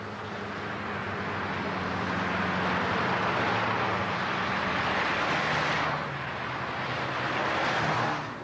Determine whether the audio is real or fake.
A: real